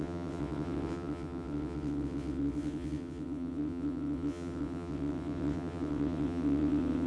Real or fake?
fake